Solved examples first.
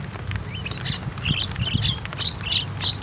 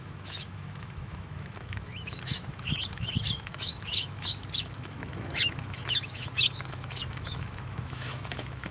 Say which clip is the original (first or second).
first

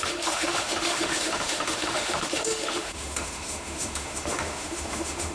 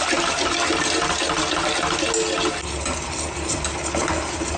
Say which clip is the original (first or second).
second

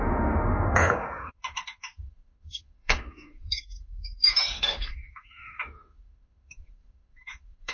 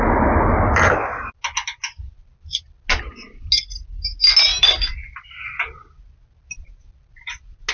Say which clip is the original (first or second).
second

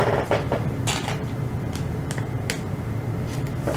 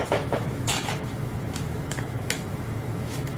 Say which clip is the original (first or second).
first